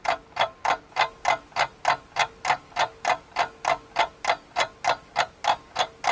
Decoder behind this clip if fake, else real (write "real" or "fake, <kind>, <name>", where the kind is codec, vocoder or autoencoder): real